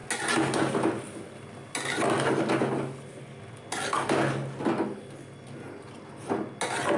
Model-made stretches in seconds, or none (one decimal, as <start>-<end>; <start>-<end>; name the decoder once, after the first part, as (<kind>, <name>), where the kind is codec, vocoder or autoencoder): none